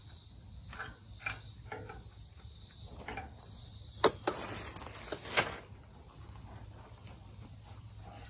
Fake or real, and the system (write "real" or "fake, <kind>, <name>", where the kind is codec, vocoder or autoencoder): real